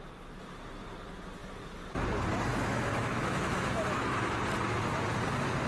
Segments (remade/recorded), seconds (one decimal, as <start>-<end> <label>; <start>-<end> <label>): 0.0-2.5 recorded; 2.5-4.4 remade; 4.4-5.7 recorded

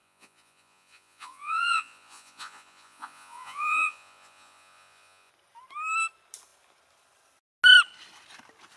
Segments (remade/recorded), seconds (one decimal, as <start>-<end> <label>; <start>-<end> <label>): 0.0-5.3 remade; 5.3-8.8 recorded

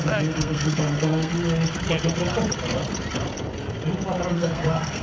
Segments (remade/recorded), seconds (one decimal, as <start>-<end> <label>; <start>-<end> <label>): 0.0-1.3 remade; 1.3-4.3 recorded; 4.3-5.0 remade